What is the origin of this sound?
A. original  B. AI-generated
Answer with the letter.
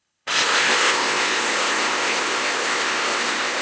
B